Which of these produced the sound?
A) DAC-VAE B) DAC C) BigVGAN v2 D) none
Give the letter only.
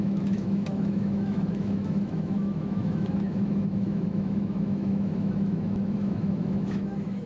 A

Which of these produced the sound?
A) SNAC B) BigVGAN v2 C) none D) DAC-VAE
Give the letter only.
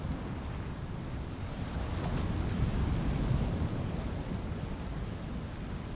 C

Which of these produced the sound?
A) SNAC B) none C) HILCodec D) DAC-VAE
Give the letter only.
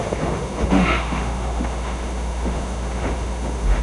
D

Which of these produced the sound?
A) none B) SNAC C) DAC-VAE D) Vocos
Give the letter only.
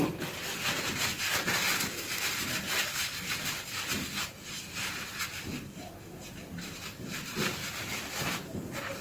A